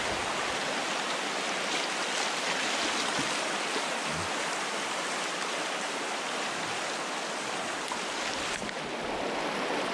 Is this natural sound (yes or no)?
yes